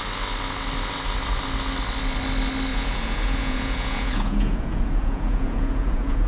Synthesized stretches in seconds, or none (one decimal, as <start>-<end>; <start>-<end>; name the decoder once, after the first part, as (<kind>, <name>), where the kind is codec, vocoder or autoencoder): 2.7-6.3 (vocoder, Vocos)